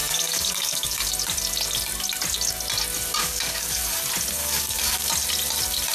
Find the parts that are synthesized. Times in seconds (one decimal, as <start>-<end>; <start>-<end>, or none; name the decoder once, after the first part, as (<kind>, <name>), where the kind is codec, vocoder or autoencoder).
0.0-1.1 (codec, DAC); 3.2-3.8; 4.4-5.1